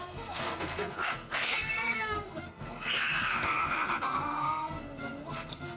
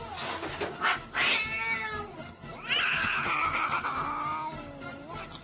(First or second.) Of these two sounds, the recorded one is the second